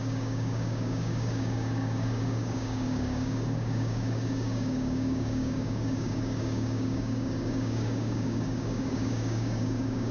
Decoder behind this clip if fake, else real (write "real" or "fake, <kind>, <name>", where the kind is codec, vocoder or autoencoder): fake, codec, DAC